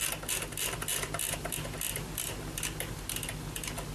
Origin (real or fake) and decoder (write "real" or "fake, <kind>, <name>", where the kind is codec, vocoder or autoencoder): real